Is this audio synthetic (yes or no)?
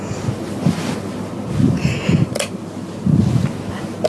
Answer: no